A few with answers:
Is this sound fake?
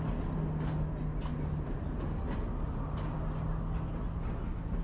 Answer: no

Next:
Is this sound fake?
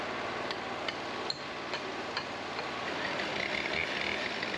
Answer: no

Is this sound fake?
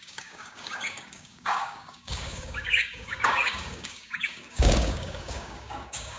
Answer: yes